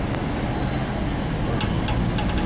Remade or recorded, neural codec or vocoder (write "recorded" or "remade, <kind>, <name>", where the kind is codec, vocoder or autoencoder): recorded